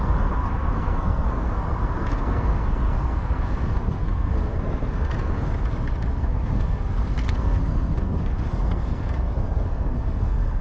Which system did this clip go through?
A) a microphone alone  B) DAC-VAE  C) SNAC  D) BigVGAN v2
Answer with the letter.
C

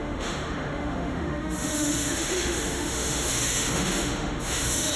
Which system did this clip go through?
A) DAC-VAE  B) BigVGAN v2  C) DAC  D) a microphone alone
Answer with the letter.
A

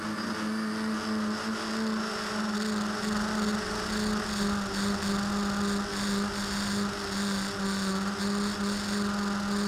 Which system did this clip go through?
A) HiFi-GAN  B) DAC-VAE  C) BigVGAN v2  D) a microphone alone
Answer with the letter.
D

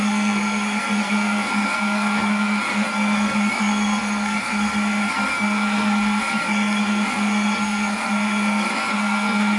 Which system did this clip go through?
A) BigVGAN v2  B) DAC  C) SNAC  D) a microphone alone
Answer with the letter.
C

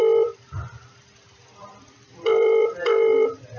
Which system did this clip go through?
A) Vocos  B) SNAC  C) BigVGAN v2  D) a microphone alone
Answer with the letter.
C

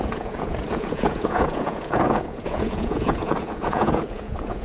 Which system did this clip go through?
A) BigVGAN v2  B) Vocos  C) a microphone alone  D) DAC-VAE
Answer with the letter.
B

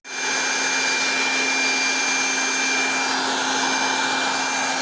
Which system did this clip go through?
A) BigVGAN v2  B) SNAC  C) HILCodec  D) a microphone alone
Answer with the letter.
D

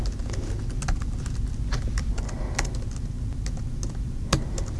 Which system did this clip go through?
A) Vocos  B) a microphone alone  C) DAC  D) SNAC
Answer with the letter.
B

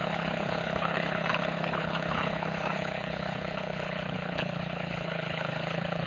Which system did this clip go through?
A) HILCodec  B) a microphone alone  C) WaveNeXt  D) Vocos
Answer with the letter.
A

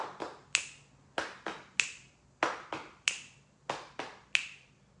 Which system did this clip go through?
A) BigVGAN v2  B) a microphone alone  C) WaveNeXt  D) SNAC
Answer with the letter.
B